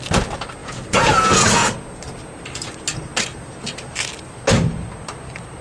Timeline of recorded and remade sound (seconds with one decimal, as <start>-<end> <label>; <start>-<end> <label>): 0.0-0.6 recorded; 0.6-1.7 remade; 1.7-5.6 recorded